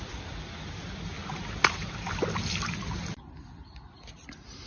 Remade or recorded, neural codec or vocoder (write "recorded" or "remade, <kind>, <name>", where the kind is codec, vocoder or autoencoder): recorded